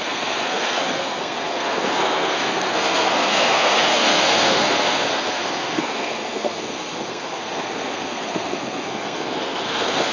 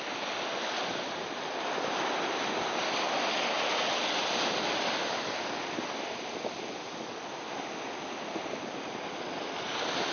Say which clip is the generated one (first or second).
first